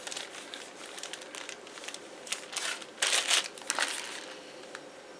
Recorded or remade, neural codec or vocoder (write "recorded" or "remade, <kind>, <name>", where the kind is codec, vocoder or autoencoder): recorded